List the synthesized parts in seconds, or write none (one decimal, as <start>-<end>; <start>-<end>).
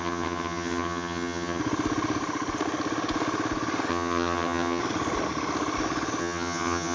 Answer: 0.0-1.6; 3.9-4.8; 6.2-6.9